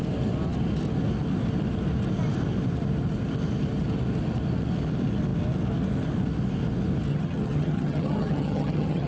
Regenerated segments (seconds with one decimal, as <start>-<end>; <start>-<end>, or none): 7.1-9.1